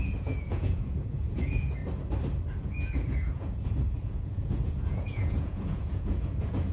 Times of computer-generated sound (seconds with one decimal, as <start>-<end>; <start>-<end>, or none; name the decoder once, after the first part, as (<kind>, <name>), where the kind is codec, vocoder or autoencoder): 0.0-1.8 (vocoder, Vocos); 2.6-6.7

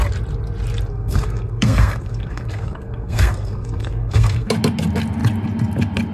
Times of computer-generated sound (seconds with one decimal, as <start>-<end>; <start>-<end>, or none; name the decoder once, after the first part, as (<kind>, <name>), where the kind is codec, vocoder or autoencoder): 0.9-4.5 (codec, SNAC)

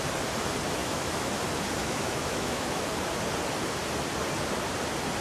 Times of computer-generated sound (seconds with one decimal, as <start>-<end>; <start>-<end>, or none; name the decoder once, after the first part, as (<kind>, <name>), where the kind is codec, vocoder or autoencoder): 0.8-1.4 (autoencoder, DAC-VAE); 1.8-2.9

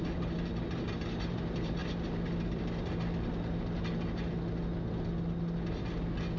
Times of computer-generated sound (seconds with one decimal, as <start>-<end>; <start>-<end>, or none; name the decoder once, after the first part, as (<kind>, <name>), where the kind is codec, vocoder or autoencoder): none

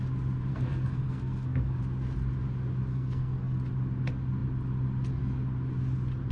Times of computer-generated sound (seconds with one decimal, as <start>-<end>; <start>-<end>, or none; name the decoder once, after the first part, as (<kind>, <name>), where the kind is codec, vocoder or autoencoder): 0.5-1.8 (codec, SNAC); 2.9-3.6

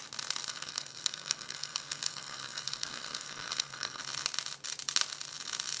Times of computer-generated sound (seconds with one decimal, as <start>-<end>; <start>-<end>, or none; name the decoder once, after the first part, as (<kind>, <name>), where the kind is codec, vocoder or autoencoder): 0.5-4.0 (codec, SNAC)